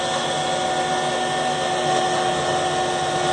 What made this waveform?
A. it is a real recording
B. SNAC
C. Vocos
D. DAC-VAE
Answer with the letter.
A